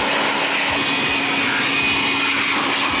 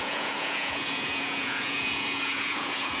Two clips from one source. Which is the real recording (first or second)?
first